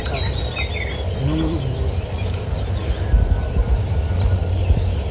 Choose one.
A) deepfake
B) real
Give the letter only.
B